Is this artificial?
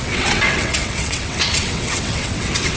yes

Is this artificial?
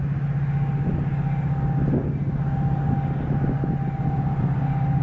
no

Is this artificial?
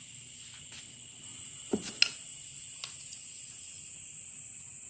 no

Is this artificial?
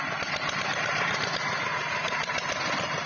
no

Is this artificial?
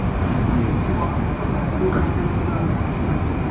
no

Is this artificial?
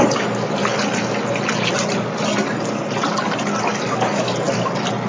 no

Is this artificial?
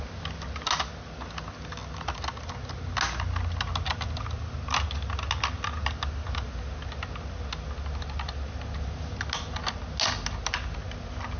no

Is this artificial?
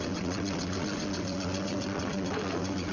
yes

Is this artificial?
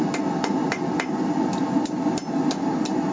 no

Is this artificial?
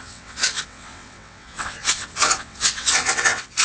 yes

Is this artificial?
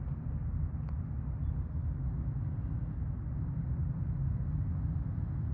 no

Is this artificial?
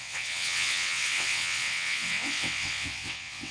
yes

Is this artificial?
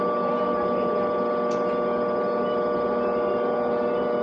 no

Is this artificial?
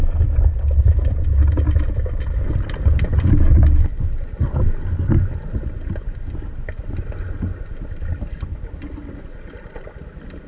no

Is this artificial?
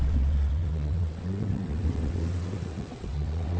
yes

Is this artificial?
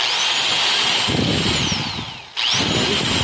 no